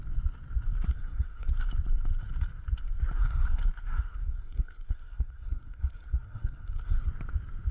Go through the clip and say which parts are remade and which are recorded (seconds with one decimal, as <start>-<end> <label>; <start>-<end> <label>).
0.0-0.9 recorded; 0.9-1.7 remade; 1.7-3.2 recorded; 3.2-7.1 remade; 7.1-7.7 recorded